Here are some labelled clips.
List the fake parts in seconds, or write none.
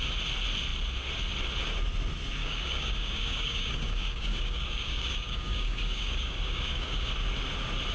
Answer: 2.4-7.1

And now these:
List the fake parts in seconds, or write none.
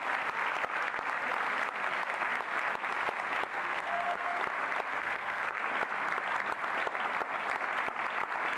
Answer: 3.5-4.4; 4.9-5.6